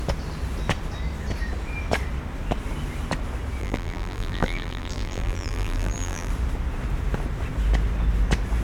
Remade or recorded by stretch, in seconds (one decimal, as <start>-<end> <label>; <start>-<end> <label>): 0.0-3.6 recorded; 3.6-6.3 remade; 6.3-8.6 recorded